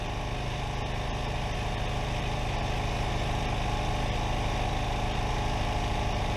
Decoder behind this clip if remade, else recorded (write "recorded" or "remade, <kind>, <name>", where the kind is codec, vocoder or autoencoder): recorded